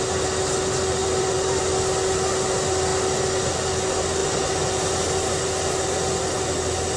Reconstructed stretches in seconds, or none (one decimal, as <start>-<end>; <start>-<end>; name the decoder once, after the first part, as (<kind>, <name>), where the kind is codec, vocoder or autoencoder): 1.0-1.6 (vocoder, BigVGAN v2)

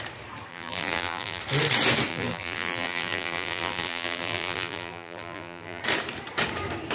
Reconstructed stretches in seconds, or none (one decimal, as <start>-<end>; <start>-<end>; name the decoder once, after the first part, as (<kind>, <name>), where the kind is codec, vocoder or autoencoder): 0.5-1.4 (vocoder, BigVGAN v2); 2.1-5.8

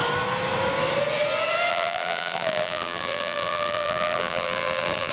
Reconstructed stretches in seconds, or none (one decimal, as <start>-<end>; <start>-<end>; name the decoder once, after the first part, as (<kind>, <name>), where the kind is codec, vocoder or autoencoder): 1.7-5.1 (vocoder, BigVGAN v2)

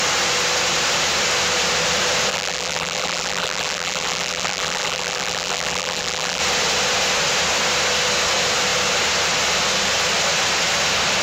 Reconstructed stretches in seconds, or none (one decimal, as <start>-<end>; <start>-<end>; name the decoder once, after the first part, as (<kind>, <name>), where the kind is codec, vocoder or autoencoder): 2.3-6.4 (vocoder, BigVGAN v2)

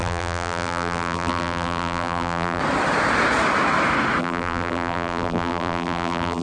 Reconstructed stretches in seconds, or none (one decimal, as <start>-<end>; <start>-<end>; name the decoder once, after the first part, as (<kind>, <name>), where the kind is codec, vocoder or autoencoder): 0.0-2.6 (vocoder, BigVGAN v2); 4.2-6.4

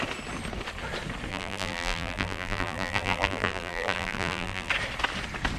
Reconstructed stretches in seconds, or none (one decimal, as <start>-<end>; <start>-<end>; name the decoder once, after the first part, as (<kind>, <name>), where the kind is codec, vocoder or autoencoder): 1.3-4.7 (vocoder, BigVGAN v2)

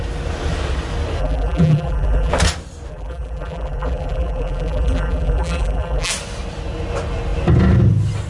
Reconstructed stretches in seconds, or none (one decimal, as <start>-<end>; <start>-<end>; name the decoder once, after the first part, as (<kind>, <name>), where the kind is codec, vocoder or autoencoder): 1.2-2.3 (vocoder, BigVGAN v2); 2.9-6.1

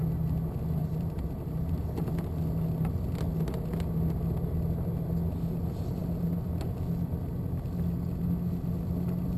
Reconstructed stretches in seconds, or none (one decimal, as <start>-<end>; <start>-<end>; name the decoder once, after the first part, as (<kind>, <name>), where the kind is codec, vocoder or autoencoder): 0.8-2.1 (vocoder, BigVGAN v2)